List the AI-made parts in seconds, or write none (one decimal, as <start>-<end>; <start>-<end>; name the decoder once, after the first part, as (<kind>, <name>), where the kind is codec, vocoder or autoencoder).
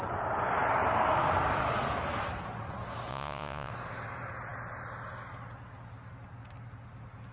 3.1-3.7 (vocoder, Vocos)